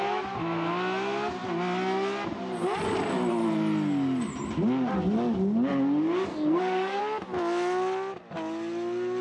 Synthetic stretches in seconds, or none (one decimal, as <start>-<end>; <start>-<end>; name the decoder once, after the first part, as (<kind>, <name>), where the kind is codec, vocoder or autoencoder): 6.3-7.0 (codec, SNAC)